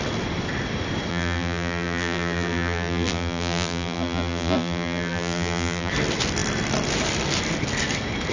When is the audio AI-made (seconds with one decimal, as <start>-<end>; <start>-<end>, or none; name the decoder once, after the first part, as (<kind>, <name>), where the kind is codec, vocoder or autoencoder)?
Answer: 1.1-5.9 (vocoder, BigVGAN v2)